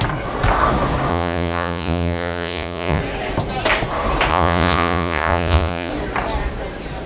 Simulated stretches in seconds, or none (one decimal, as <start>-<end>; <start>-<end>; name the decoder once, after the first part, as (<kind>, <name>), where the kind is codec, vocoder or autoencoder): 1.1-3.0 (vocoder, Vocos); 4.3-5.9